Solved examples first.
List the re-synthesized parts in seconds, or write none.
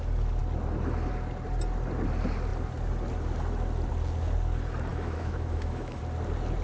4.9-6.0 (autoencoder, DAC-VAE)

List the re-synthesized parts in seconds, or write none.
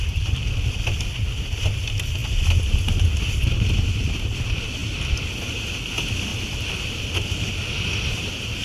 none